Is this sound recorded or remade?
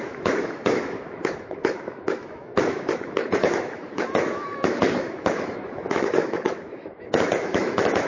remade